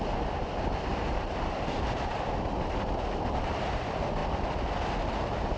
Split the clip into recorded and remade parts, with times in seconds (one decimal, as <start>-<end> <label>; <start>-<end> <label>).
0.0-0.9 recorded; 0.9-2.1 remade; 2.1-5.6 recorded